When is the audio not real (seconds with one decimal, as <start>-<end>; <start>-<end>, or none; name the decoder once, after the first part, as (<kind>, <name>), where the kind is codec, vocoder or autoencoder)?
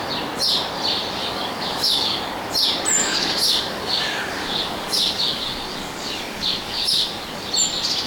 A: 1.2-2.4 (codec, DAC); 3.0-7.5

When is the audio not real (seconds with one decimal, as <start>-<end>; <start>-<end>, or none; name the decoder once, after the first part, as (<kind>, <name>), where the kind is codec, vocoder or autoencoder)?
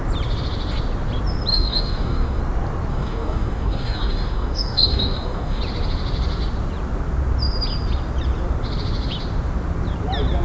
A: 1.5-2.4 (codec, DAC); 2.9-5.6